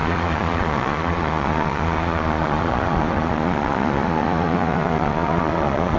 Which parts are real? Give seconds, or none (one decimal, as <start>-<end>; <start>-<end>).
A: none